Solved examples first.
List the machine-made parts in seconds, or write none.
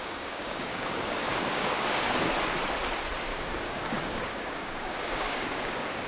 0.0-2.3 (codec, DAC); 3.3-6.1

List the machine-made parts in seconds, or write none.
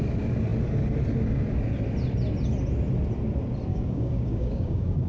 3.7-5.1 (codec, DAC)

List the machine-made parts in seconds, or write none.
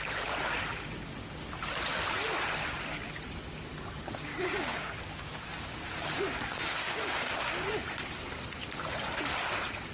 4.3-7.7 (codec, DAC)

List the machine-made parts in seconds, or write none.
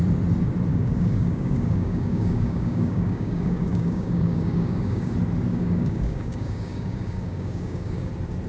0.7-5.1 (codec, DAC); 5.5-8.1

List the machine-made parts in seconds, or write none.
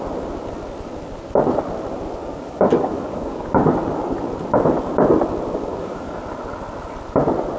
2.2-3.5 (codec, DAC); 5.7-6.2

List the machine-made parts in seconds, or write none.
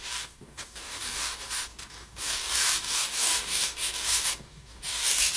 0.0-5.4 (codec, DAC)